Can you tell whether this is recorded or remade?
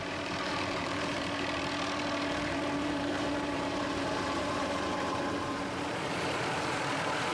remade